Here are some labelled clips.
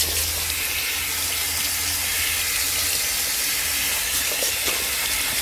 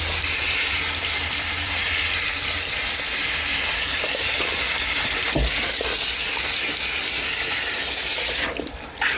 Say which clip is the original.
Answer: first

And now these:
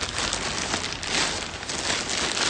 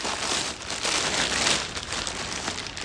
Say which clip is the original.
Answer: first